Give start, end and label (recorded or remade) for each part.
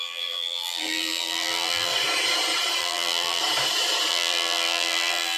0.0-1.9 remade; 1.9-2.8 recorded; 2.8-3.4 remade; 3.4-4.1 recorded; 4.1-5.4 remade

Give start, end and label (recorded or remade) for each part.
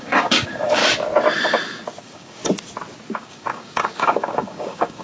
0.0-0.8 remade; 0.8-2.0 recorded; 2.0-2.4 remade; 2.4-3.1 recorded; 3.1-5.0 remade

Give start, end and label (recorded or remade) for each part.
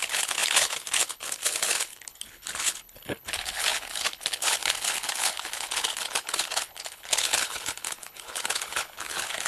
0.0-9.5 remade